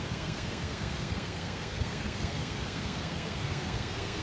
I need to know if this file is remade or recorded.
remade